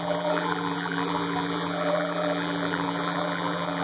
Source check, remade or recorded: remade